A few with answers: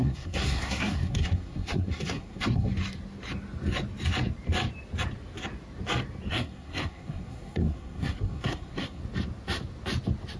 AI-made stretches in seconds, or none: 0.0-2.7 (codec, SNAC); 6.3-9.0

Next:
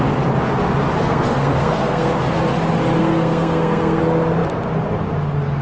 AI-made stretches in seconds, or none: 1.0-2.1 (codec, SNAC); 3.0-4.0

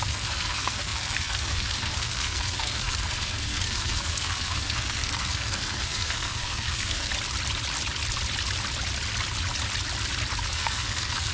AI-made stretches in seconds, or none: 0.0-7.1 (codec, SNAC); 10.5-11.3

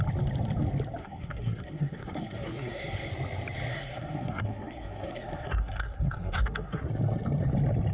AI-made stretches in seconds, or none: 1.0-3.1 (codec, SNAC); 3.7-6.9

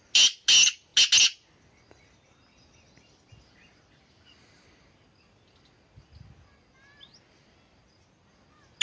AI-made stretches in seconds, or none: none

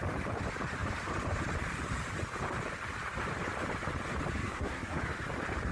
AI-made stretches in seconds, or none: 4.4-5.0 (codec, SNAC)